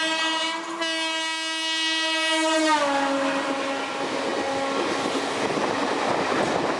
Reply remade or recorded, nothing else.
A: recorded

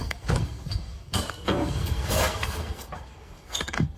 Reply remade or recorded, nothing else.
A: remade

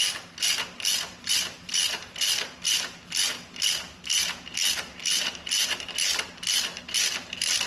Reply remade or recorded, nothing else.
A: recorded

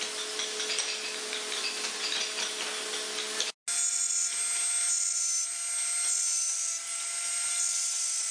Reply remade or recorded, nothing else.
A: recorded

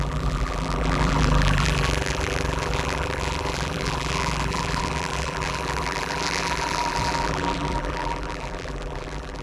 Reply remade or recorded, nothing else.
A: remade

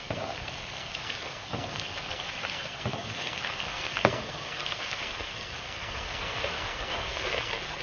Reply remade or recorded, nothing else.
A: remade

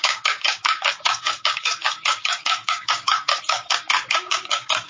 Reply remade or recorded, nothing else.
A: remade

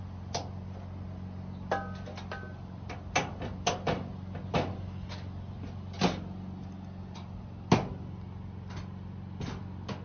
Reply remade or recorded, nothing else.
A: recorded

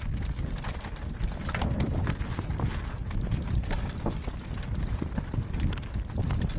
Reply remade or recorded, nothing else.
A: recorded